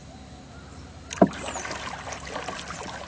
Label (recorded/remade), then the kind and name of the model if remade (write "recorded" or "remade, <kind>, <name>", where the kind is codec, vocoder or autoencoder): recorded